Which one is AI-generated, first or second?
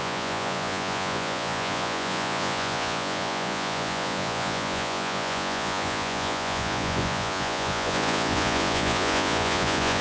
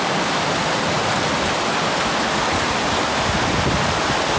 first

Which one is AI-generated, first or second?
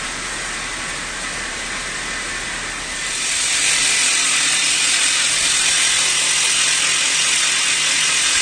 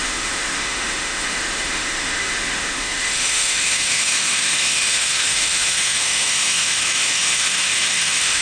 second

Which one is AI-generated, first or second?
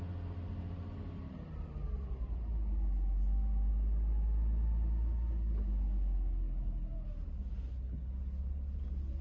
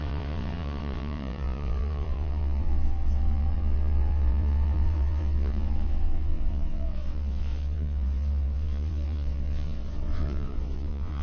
second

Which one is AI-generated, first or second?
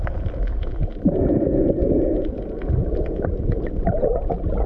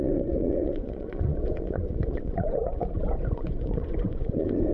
second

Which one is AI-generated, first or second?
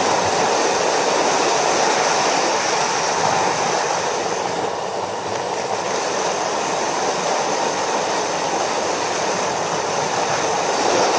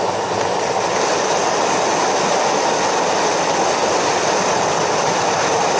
first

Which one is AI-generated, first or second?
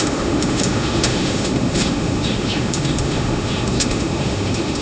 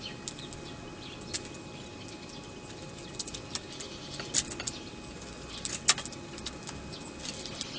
first